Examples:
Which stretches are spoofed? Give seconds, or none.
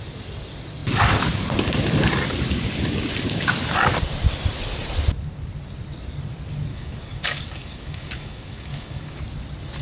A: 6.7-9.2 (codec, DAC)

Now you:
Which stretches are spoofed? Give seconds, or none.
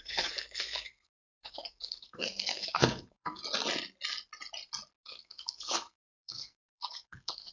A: 0.0-3.4 (codec, SNAC); 5.0-7.5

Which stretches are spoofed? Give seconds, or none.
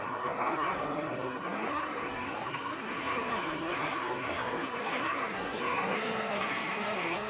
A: 0.0-7.3 (codec, SNAC)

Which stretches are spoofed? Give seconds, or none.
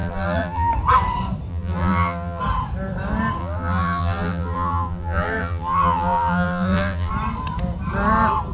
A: 0.0-0.7 (vocoder, BigVGAN v2); 1.5-2.4; 3.4-7.1